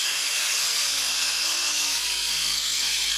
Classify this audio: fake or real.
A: fake